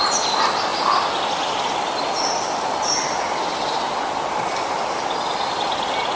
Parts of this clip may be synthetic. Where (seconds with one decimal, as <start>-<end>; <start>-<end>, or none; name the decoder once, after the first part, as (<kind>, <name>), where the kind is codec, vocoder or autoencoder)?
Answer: none